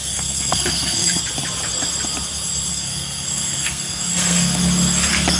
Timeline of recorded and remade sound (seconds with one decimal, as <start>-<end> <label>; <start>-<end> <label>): 0.0-1.2 remade; 1.2-2.7 recorded; 2.7-4.6 remade; 4.6-5.4 recorded